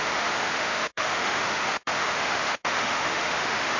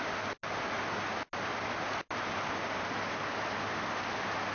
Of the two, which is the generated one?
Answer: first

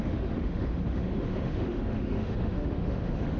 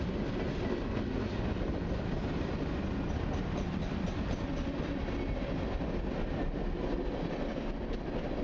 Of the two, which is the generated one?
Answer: first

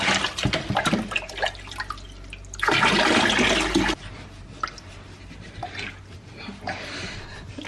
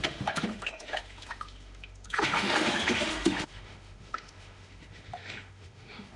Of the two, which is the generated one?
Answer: second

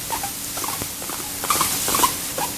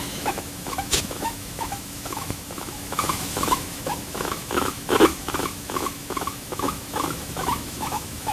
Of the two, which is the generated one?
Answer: second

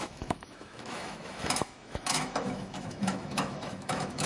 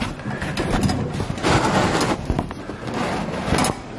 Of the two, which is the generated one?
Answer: first